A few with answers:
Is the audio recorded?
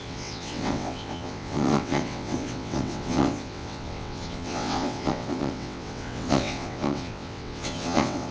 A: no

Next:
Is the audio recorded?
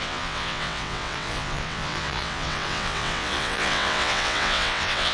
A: no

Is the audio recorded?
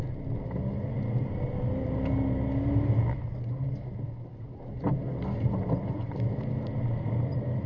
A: yes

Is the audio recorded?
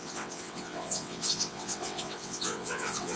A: no